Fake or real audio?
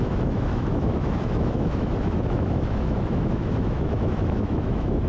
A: fake